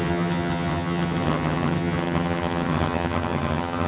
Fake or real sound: fake